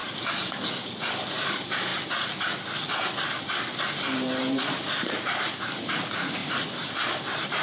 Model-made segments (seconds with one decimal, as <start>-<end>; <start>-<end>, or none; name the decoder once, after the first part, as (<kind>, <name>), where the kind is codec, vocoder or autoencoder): 0.0-1.9 (vocoder, BigVGAN v2); 4.0-7.6